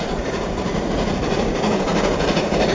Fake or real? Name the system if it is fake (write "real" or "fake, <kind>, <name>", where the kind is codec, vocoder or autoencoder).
fake, vocoder, Vocos